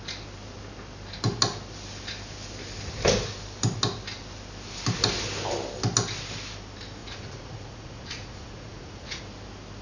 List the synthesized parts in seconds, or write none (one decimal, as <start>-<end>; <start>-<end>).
7.0-9.2